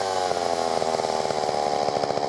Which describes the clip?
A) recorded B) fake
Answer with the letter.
A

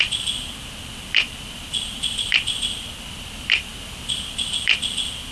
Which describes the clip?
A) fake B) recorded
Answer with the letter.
A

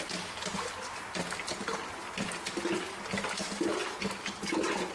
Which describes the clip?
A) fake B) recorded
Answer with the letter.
B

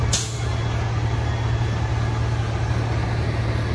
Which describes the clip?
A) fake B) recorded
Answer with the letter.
B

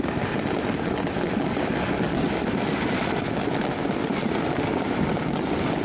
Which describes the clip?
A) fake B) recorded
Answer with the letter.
B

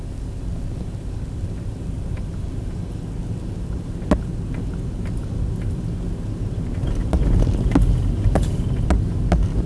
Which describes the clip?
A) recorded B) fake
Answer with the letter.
A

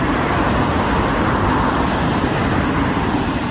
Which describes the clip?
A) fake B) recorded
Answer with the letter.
B